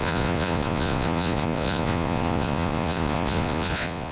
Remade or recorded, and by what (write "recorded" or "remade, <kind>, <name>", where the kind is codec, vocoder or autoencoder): remade, vocoder, Vocos